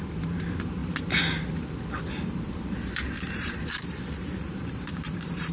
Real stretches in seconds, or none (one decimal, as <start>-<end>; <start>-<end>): 0.8-2.0